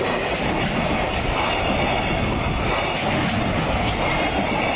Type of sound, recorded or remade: recorded